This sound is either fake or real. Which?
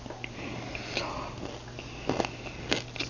real